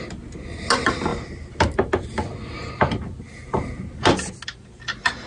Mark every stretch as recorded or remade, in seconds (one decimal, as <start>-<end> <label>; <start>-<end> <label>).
0.0-5.3 recorded